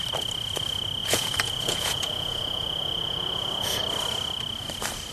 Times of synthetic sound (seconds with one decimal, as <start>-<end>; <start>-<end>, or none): 1.0-3.8